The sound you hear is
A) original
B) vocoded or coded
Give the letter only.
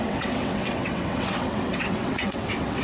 B